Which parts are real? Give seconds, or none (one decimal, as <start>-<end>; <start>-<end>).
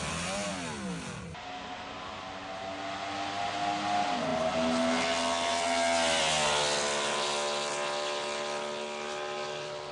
0.0-9.9